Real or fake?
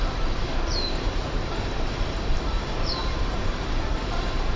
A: fake